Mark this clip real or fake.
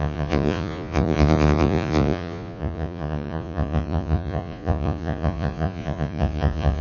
fake